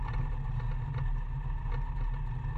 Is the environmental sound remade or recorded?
recorded